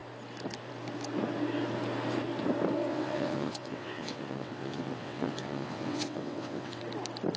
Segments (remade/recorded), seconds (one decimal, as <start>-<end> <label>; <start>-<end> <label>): 0.0-2.9 recorded; 2.9-6.8 remade; 6.8-7.4 recorded